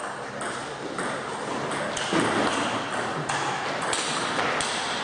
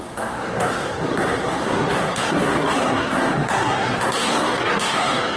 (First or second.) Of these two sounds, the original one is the first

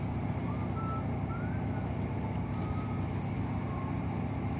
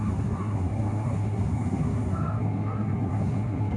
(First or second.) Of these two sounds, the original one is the first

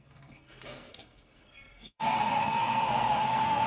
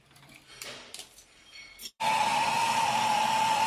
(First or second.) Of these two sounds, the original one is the second